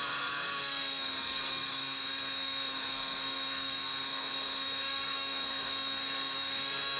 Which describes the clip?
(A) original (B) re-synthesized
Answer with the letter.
B